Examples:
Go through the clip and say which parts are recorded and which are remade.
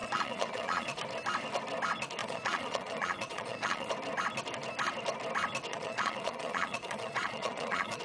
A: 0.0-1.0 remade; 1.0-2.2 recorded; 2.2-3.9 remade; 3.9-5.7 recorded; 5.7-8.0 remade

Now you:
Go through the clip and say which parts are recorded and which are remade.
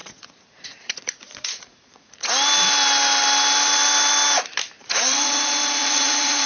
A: 0.0-2.3 remade; 2.3-4.8 recorded; 4.8-6.5 remade